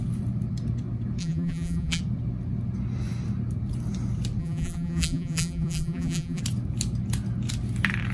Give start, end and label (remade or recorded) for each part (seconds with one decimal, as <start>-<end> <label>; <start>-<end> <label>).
0.0-1.2 recorded; 1.2-2.0 remade; 2.0-4.4 recorded; 4.4-6.4 remade; 6.4-8.1 recorded